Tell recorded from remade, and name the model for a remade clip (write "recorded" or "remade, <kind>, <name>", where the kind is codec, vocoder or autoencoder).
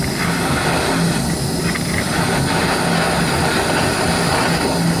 recorded